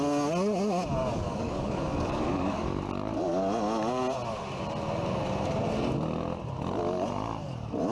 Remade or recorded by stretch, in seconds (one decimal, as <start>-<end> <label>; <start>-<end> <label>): 0.0-1.0 recorded; 1.0-2.8 remade; 2.8-7.9 recorded